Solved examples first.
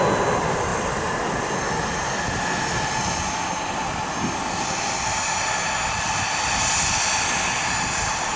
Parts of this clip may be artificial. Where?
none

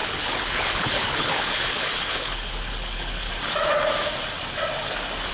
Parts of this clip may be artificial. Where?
0.0-3.3

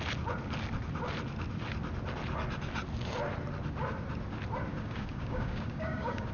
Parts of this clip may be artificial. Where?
4.7-6.3